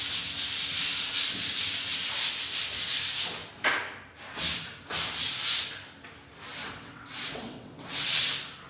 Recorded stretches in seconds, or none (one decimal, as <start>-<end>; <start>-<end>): 0.0-6.6; 8.2-8.7